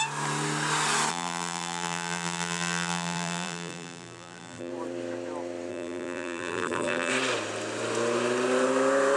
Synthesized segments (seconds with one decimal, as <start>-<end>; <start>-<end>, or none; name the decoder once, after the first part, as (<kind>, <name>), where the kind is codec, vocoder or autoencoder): 1.1-4.7 (vocoder, BigVGAN v2); 5.7-7.1

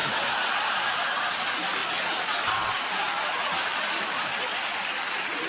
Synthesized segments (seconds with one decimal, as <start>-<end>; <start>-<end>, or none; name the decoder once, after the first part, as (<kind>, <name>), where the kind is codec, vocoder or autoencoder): none

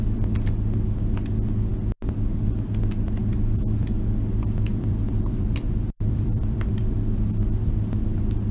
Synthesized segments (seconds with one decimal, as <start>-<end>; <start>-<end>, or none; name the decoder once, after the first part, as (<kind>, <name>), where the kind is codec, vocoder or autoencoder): 4.7-6.7 (vocoder, BigVGAN v2)

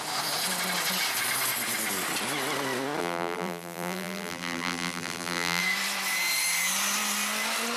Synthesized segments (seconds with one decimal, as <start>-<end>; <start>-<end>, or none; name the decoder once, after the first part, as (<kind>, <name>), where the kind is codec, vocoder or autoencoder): 3.0-5.6 (vocoder, BigVGAN v2)

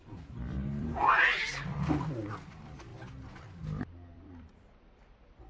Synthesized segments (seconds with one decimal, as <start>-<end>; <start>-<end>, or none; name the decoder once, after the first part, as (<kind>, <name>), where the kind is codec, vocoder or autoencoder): 0.0-1.0 (vocoder, BigVGAN v2); 2.5-2.9; 3.8-5.5

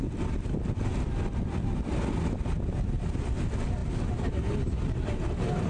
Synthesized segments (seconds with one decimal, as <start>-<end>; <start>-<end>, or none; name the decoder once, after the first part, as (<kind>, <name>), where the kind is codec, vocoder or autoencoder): 0.9-1.6 (vocoder, BigVGAN v2)

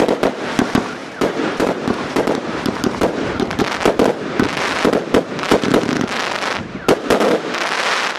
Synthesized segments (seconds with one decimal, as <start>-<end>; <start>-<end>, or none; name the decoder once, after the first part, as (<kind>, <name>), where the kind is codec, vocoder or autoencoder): 1.0-3.6 (vocoder, BigVGAN v2)